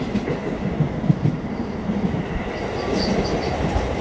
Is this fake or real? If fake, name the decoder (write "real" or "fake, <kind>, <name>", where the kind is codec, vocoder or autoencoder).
real